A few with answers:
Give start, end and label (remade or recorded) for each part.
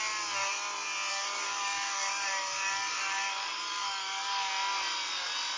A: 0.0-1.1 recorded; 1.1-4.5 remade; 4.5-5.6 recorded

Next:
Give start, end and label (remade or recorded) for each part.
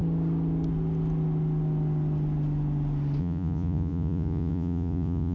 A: 0.0-3.2 recorded; 3.2-5.3 remade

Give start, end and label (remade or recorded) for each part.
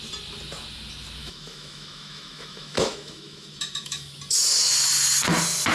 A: 0.0-1.2 recorded; 1.2-4.1 remade; 4.1-5.7 recorded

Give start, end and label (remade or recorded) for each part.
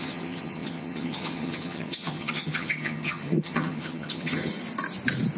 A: 0.0-4.5 remade; 4.5-5.4 recorded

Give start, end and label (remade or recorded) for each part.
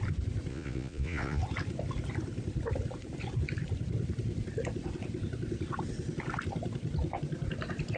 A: 0.0-0.5 recorded; 0.5-1.4 remade; 1.4-8.0 recorded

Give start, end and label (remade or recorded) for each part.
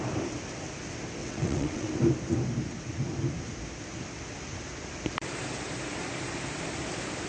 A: 0.0-1.2 recorded; 1.2-1.9 remade; 1.9-7.3 recorded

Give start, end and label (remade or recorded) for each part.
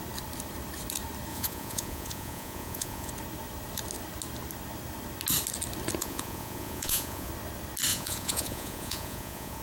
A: 0.0-1.3 recorded; 1.3-3.1 remade; 3.1-6.0 recorded; 6.0-7.3 remade; 7.3-7.9 recorded; 7.9-9.6 remade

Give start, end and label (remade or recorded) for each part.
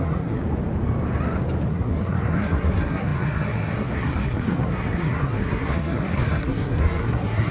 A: 0.0-0.4 remade; 0.4-1.7 recorded; 1.7-7.5 remade